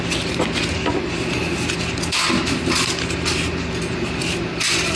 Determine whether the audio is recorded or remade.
recorded